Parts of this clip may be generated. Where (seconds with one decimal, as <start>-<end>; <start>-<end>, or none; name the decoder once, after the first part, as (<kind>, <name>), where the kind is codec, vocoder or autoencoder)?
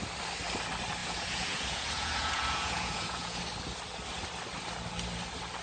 1.0-3.4 (vocoder, Vocos)